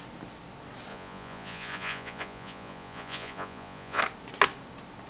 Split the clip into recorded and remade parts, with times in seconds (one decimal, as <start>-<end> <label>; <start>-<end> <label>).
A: 0.0-0.9 recorded; 0.9-4.0 remade; 4.0-5.1 recorded